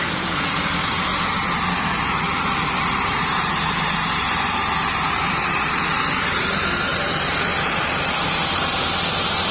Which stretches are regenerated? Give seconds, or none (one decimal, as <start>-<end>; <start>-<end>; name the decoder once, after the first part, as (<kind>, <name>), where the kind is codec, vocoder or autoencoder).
0.0-1.1 (vocoder, BigVGAN v2); 2.0-9.5